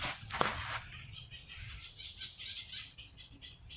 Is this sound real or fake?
real